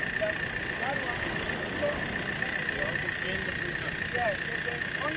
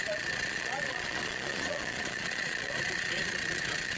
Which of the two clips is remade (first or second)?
second